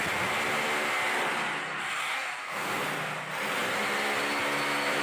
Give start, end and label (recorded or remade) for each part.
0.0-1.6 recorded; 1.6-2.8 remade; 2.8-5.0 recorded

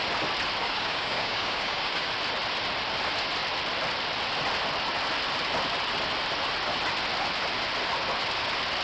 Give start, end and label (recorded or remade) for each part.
0.0-0.6 recorded; 0.6-2.1 remade; 2.1-8.8 recorded

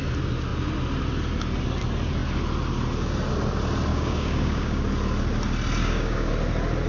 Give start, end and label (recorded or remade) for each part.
0.0-3.9 recorded; 3.9-4.8 remade; 4.8-5.8 recorded; 5.8-6.3 remade; 6.3-6.9 recorded

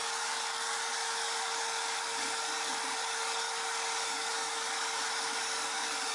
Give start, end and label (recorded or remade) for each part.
0.0-6.1 remade

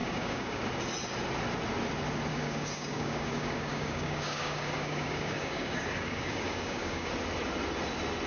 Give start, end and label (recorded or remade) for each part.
0.0-0.6 remade; 0.6-2.3 recorded; 2.3-7.1 remade; 7.1-8.3 recorded

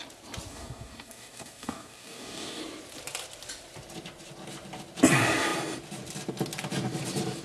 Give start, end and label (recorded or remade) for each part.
0.0-0.5 recorded; 0.5-2.6 remade; 2.6-7.4 recorded